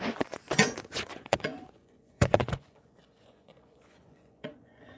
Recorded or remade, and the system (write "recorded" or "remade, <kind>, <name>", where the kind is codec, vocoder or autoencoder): remade, vocoder, Vocos